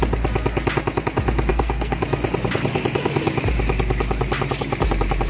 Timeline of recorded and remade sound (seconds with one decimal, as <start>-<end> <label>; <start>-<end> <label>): 0.0-1.5 recorded; 1.5-2.0 remade; 2.0-5.3 recorded